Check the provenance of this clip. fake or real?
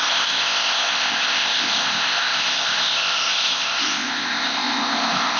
fake